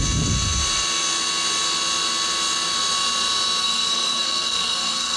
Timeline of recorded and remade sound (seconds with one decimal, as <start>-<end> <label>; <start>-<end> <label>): 0.0-3.6 recorded; 3.6-5.2 remade